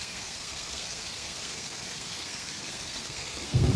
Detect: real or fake fake